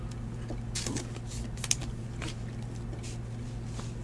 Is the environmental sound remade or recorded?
recorded